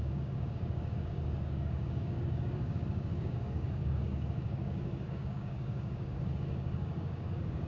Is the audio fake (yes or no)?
yes